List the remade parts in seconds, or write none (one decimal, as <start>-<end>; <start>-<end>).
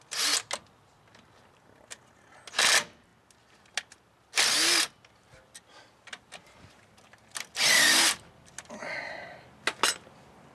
none